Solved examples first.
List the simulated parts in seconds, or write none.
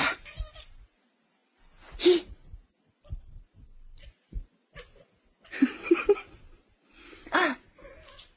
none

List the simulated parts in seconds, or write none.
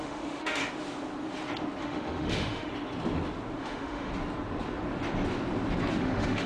0.0-0.6 (autoencoder, DAC-VAE); 1.8-2.7; 3.6-4.1; 6.0-6.5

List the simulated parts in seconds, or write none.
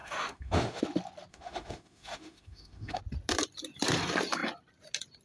0.0-0.8 (autoencoder, DAC-VAE); 1.3-3.0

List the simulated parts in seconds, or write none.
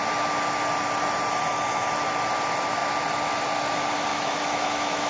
4.1-5.1 (autoencoder, DAC-VAE)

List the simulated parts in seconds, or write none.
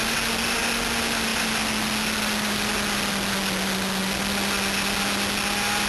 none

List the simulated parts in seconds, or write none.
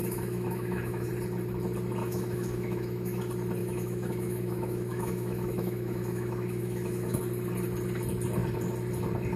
0.0-1.1 (autoencoder, DAC-VAE); 2.0-3.2; 3.6-7.2